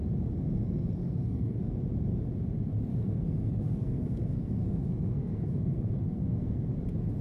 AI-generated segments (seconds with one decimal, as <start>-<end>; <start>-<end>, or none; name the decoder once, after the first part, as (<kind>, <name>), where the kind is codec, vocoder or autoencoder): 1.0-1.7 (codec, SNAC); 2.9-6.7